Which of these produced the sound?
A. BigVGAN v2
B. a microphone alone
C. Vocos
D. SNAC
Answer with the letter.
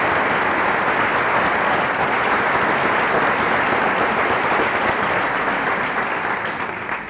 B